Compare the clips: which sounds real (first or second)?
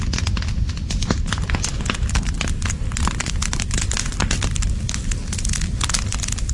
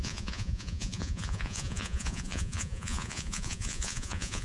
first